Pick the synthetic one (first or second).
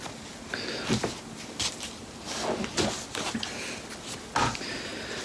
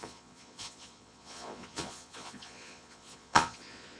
second